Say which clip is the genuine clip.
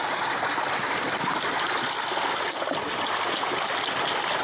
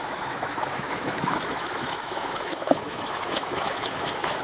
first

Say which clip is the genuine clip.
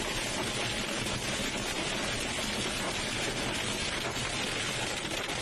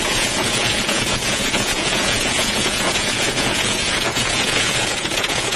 first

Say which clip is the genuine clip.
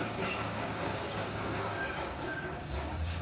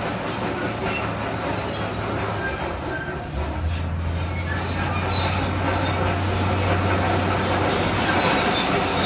second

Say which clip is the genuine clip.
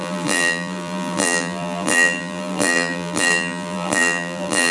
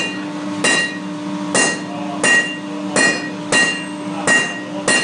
second